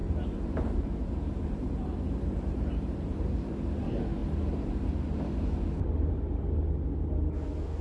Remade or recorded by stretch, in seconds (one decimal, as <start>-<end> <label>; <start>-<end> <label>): 0.0-3.6 remade; 3.6-7.8 recorded

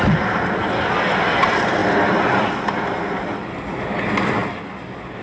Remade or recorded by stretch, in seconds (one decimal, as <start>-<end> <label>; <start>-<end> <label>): 0.0-5.2 recorded

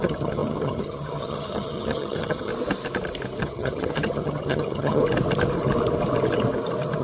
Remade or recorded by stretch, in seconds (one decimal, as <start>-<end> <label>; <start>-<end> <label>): 0.0-2.5 remade; 2.5-3.4 recorded; 3.4-5.0 remade; 5.0-7.0 recorded

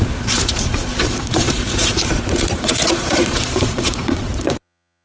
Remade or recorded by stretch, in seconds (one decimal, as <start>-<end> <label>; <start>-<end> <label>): 0.0-5.0 remade